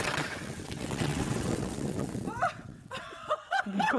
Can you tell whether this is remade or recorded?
remade